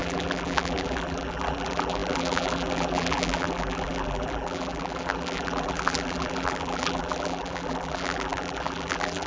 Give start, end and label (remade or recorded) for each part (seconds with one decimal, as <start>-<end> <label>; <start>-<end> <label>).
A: 0.0-9.3 remade